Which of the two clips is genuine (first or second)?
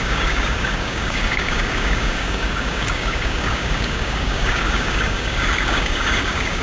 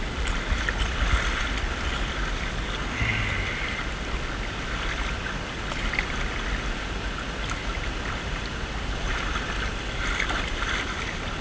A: second